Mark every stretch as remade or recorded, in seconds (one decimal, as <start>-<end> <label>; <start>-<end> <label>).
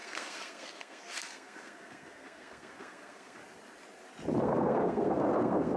0.0-3.4 remade; 3.4-4.4 recorded; 4.4-5.8 remade